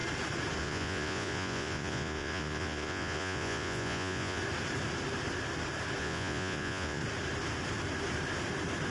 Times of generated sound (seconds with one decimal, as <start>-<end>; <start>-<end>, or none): 0.6-4.4; 6.0-7.0